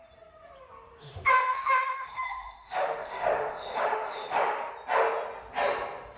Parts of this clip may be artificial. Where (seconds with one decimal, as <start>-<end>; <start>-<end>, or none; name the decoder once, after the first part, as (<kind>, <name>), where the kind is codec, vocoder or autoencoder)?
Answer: 1.0-4.7 (autoencoder, DAC-VAE)